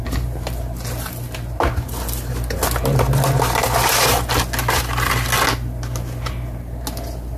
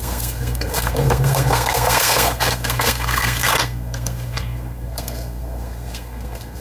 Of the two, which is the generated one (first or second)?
second